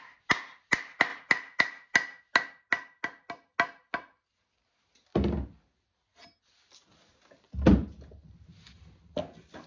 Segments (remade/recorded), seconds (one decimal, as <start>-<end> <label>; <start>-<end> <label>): 0.0-9.7 recorded